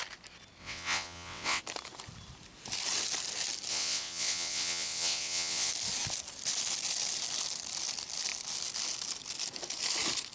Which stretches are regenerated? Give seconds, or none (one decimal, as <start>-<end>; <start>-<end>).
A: 0.6-1.6; 3.7-5.7